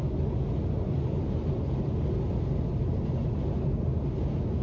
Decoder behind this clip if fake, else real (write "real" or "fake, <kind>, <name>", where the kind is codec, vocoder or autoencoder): real